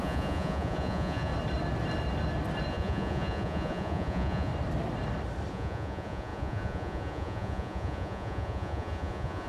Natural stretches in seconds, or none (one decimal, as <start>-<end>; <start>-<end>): 1.3-2.7; 4.5-5.5